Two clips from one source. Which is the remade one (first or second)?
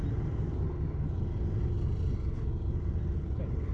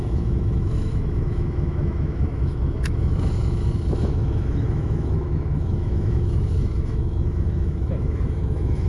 second